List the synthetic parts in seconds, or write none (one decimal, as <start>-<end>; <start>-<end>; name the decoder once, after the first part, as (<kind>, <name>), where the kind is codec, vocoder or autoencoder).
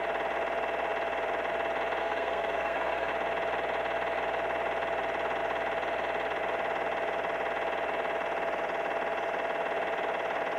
2.0-3.1 (codec, SNAC)